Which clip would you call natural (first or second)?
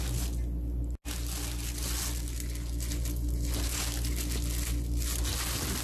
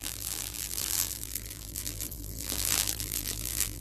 first